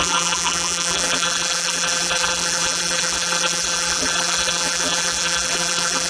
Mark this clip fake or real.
fake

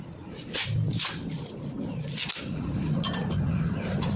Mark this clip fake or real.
real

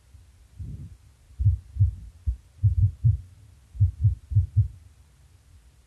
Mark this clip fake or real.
real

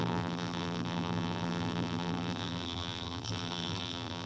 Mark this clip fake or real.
fake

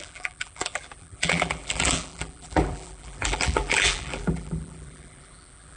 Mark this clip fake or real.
fake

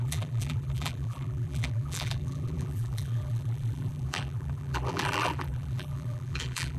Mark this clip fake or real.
fake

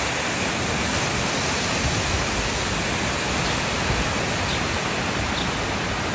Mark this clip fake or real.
real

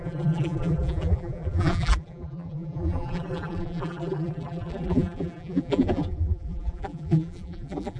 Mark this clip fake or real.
fake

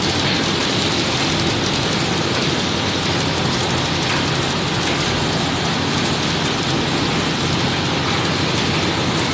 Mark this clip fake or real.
real